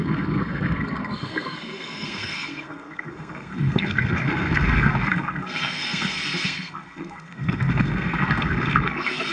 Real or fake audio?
fake